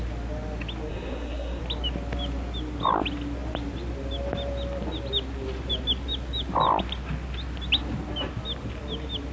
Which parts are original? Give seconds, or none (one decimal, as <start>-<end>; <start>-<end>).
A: 0.0-0.9; 1.6-9.3